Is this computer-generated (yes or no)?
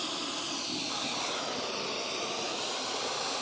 no